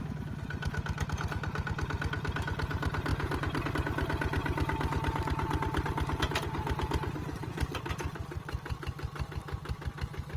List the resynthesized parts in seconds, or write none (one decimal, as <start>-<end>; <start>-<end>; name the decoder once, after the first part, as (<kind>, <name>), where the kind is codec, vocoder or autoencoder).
3.1-3.7 (vocoder, BigVGAN v2); 7.4-8.9